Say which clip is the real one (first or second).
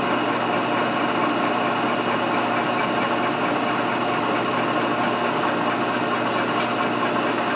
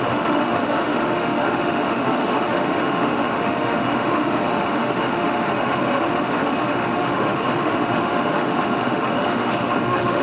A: first